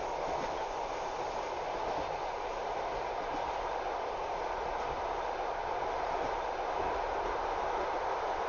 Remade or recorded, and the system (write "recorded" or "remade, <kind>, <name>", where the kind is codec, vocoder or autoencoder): recorded